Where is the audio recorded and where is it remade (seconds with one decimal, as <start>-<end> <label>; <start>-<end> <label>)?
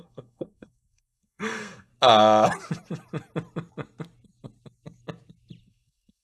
0.0-1.9 remade; 1.9-5.6 recorded; 5.6-6.2 remade